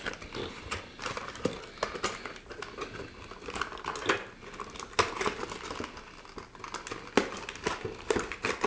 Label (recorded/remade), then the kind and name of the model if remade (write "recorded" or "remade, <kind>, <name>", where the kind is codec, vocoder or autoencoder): recorded